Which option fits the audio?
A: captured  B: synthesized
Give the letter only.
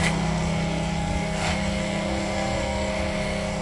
B